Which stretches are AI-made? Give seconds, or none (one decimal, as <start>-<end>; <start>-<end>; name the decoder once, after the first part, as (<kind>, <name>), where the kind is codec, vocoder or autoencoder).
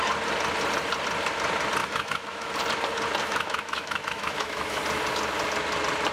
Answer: 1.8-2.5 (autoencoder, DAC-VAE); 3.2-4.8